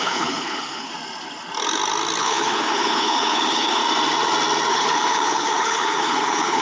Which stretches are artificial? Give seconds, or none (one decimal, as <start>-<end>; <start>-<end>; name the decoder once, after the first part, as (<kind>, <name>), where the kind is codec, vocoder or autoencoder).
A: 0.0-0.9 (codec, HILCodec); 2.2-3.8; 4.7-6.6